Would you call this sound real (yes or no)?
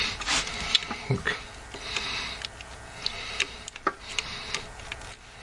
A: yes